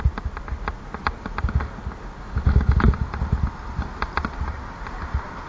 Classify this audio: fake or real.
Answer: real